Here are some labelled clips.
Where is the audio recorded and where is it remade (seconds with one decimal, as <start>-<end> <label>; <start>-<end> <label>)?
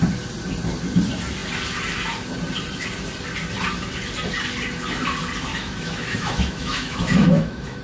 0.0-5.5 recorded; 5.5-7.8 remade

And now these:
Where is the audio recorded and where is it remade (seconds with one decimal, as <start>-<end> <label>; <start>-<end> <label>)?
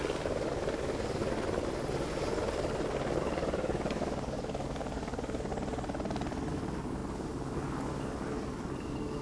0.0-1.2 remade; 1.2-3.2 recorded; 3.2-5.5 remade; 5.5-6.5 recorded; 6.5-9.2 remade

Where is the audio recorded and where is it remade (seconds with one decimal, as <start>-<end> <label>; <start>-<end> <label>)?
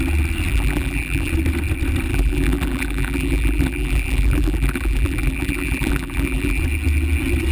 0.0-0.5 recorded; 0.5-1.3 remade; 1.3-2.1 recorded; 2.1-6.6 remade; 6.6-7.5 recorded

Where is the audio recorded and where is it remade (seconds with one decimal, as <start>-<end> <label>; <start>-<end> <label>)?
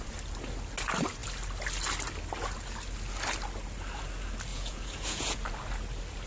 0.0-4.5 recorded; 4.5-5.4 remade; 5.4-6.3 recorded